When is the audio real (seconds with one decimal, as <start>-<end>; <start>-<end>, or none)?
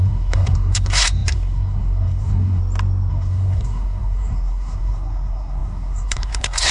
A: 2.6-3.1